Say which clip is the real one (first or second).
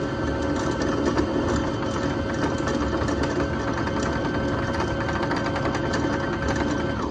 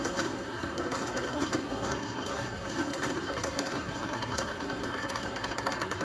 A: first